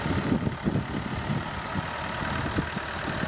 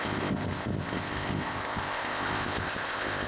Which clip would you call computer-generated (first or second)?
second